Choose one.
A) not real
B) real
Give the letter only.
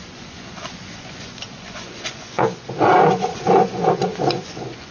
A